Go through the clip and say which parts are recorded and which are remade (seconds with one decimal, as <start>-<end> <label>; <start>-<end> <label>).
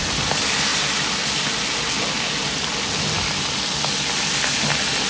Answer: 0.0-5.1 recorded